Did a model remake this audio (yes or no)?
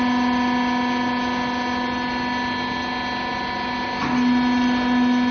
no